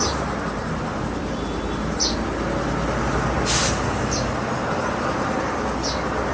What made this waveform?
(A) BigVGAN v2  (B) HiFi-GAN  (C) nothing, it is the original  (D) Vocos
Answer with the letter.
C